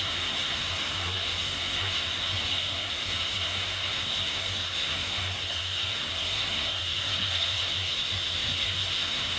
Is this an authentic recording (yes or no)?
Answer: no